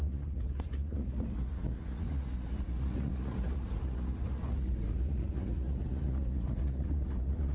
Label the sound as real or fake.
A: fake